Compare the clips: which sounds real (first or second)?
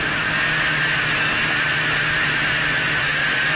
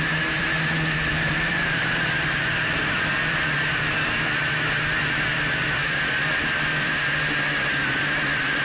first